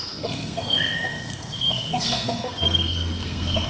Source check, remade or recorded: remade